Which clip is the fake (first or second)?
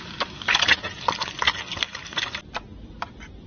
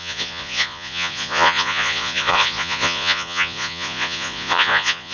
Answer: second